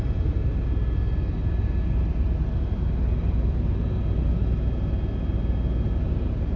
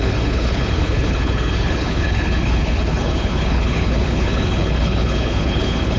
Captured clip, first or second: first